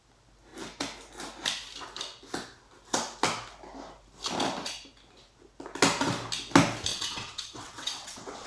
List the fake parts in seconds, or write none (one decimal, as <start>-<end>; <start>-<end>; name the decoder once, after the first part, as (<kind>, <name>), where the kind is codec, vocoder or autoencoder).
6.9-8.5 (vocoder, WaveNeXt)